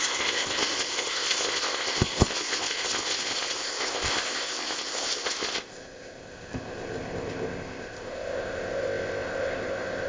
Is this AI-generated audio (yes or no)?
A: yes